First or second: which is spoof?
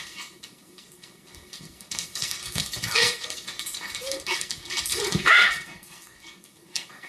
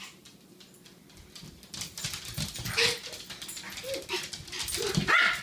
first